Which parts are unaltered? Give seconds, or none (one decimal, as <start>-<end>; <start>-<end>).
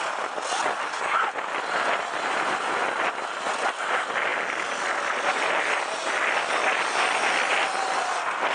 0.0-8.5